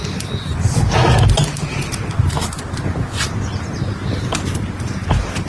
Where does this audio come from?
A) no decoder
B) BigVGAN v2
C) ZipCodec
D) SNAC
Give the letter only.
A